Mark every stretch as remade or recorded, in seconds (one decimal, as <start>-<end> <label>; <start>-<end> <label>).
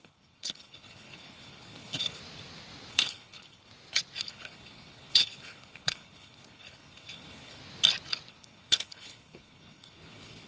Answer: 0.0-2.2 remade; 2.2-2.9 recorded; 2.9-3.7 remade; 3.7-4.2 recorded; 4.2-7.6 remade; 7.6-8.3 recorded; 8.3-10.5 remade